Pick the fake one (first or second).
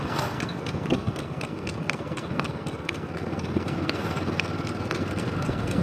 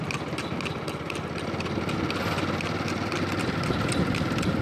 first